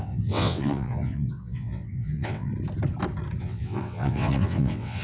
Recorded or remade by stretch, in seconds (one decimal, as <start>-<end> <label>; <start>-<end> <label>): 0.0-2.5 remade; 2.5-3.4 recorded; 3.4-5.0 remade